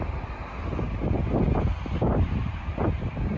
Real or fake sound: real